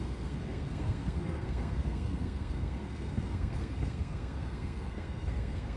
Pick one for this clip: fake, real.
fake